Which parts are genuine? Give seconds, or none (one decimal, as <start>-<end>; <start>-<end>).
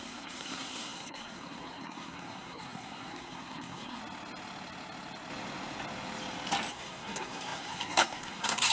4.0-6.7